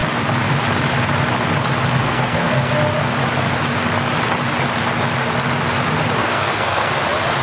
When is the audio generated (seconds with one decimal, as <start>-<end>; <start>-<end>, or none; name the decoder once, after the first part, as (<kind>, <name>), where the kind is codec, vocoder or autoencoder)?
2.0-2.7 (codec, SNAC); 6.2-6.9